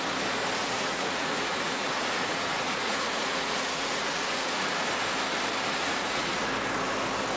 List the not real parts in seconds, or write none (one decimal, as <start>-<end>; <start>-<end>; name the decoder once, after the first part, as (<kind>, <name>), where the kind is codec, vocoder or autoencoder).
0.6-4.9 (vocoder, Vocos); 5.8-6.4

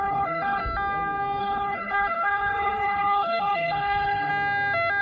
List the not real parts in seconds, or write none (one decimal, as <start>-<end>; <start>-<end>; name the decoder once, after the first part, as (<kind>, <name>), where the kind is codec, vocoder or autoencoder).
0.0-0.6 (codec, HILCodec); 1.4-4.3

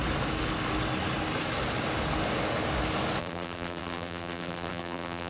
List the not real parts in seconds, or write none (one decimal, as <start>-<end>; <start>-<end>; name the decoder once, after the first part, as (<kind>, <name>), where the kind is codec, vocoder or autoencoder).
3.2-5.3 (vocoder, BigVGAN v2)